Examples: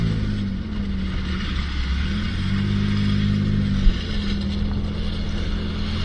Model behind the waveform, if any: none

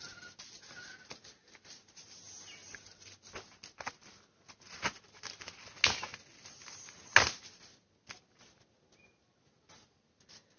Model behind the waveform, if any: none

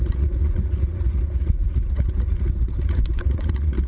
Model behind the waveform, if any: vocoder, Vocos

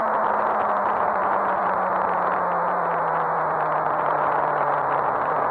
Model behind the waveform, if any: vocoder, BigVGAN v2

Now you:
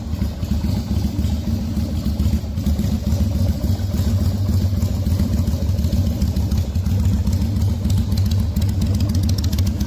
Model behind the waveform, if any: none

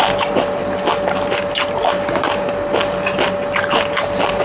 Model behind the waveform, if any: none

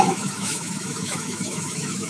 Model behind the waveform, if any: autoencoder, DAC-VAE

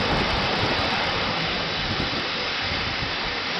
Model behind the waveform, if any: none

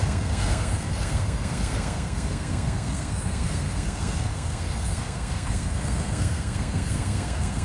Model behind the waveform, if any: codec, SNAC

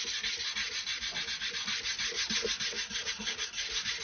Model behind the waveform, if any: none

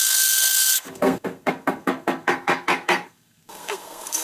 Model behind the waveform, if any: codec, SNAC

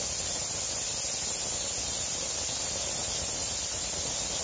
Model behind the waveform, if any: none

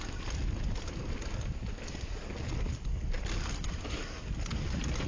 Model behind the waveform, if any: none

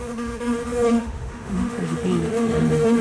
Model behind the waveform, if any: autoencoder, DAC-VAE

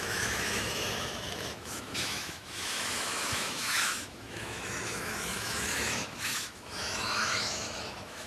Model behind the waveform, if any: autoencoder, DAC-VAE